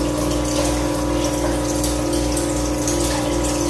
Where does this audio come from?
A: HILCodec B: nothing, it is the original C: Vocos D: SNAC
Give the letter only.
B